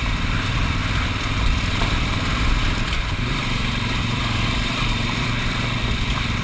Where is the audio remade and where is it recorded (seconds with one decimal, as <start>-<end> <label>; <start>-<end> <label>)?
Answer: 0.0-6.4 remade